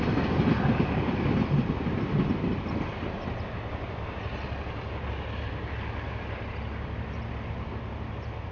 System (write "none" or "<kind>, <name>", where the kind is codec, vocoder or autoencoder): none